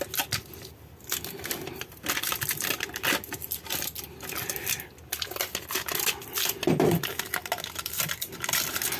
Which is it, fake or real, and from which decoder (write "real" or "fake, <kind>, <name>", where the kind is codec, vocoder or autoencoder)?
real